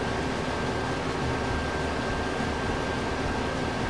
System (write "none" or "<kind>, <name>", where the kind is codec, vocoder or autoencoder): none